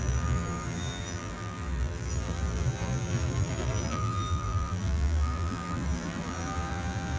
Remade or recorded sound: remade